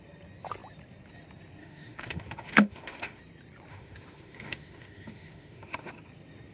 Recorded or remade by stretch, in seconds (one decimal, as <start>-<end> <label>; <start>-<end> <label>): 0.0-1.6 recorded; 1.6-3.2 remade; 3.2-3.7 recorded; 3.7-5.9 remade; 5.9-6.5 recorded